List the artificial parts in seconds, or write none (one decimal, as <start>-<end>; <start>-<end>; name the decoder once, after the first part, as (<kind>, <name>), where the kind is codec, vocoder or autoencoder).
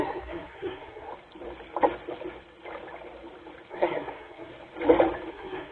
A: 0.0-1.1 (codec, SNAC); 3.7-4.5; 5.3-5.7